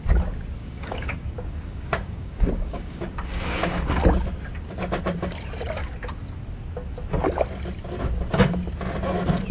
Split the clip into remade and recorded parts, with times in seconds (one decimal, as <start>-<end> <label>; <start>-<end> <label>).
0.0-0.6 recorded; 0.6-4.0 remade; 4.0-9.5 recorded